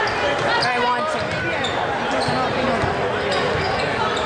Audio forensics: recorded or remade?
recorded